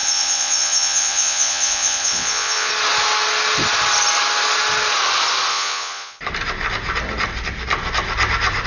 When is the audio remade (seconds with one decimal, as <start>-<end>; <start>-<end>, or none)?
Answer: 0.0-2.7; 5.5-6.2